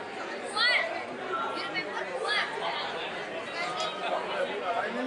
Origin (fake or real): real